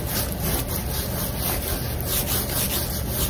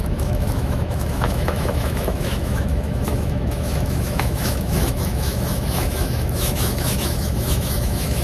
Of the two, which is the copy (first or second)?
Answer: second